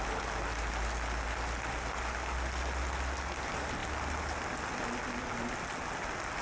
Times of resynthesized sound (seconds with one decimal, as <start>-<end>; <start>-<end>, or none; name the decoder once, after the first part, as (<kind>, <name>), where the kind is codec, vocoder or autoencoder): none